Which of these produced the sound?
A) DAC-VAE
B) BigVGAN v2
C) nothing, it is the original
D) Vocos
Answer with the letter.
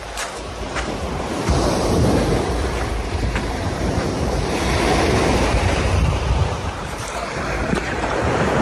B